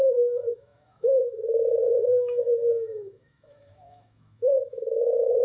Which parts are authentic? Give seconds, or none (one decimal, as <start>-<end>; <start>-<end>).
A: none

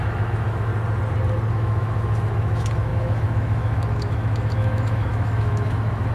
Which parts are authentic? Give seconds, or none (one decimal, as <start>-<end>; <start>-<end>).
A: 0.7-1.5

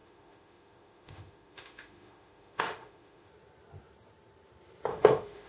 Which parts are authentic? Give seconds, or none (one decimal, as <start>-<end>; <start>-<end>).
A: 3.3-4.9